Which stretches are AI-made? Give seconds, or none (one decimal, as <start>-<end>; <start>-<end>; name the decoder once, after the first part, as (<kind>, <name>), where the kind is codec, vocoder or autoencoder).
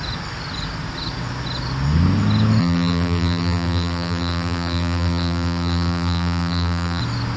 2.6-7.0 (vocoder, BigVGAN v2)